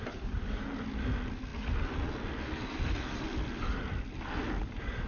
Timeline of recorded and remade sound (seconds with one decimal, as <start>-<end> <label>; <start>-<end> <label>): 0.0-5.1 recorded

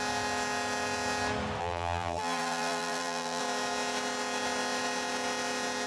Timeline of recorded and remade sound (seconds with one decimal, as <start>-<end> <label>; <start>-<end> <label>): 0.0-1.6 recorded; 1.6-3.4 remade; 3.4-5.9 recorded

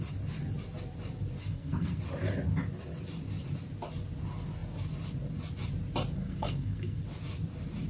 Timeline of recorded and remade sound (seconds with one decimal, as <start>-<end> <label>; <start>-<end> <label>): 0.0-1.4 recorded; 1.4-2.0 remade; 2.0-6.2 recorded; 6.2-7.0 remade; 7.0-7.9 recorded

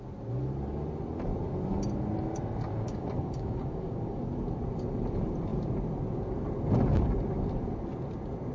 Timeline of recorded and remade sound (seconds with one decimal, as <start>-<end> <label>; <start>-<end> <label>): 0.0-2.7 recorded; 2.7-4.2 remade; 4.2-8.5 recorded